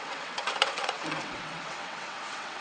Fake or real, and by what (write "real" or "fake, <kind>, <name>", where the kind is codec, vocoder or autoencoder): fake, vocoder, WaveNeXt